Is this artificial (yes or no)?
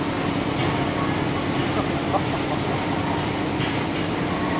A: no